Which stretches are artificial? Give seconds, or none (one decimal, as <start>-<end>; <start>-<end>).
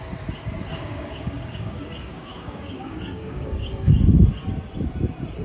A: 0.7-3.9